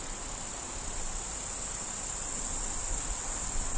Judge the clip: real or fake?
real